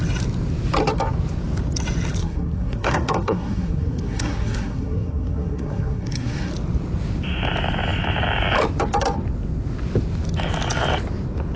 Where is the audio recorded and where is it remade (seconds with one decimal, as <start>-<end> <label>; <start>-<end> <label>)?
0.0-2.2 recorded; 2.2-6.5 remade; 6.5-11.6 recorded